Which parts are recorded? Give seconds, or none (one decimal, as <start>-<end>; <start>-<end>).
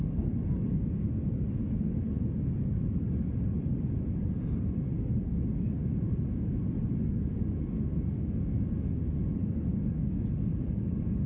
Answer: 0.0-11.3